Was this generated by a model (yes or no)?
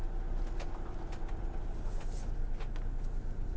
no